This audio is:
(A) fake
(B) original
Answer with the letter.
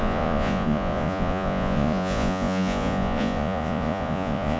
A